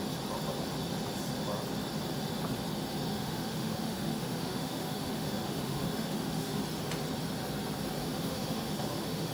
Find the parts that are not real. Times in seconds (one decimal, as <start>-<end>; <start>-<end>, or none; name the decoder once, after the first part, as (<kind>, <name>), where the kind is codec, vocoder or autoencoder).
3.1-6.6 (autoencoder, DAC-VAE); 8.0-9.3